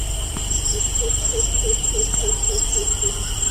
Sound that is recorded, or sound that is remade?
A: recorded